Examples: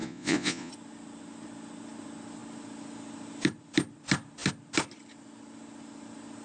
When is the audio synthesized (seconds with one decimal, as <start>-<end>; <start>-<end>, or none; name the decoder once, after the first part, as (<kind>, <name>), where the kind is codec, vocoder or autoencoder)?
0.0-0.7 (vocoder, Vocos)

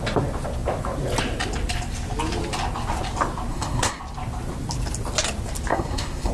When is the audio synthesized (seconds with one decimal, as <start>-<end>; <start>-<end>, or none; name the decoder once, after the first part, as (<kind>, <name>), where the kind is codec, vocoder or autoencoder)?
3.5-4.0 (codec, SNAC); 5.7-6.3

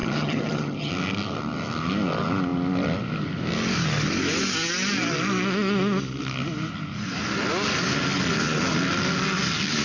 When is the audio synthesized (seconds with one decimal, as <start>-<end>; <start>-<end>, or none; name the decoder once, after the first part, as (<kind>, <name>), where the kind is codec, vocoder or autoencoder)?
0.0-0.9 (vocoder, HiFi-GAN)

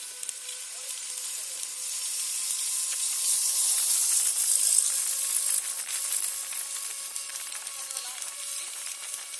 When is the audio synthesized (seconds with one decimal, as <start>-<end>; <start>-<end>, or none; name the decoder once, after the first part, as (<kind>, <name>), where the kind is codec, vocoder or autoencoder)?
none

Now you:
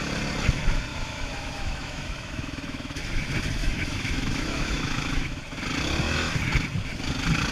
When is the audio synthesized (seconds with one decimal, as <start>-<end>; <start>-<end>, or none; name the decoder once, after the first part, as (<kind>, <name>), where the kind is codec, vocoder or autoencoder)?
0.9-3.0 (autoencoder, DAC-VAE); 3.6-5.4

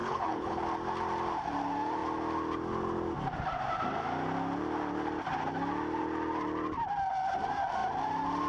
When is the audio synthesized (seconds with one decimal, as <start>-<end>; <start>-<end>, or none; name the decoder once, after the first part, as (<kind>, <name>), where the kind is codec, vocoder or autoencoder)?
0.0-0.6 (codec, HILCodec)